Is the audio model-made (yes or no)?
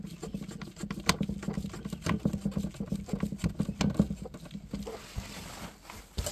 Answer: no